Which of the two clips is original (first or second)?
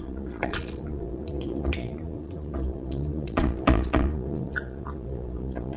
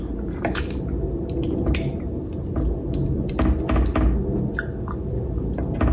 second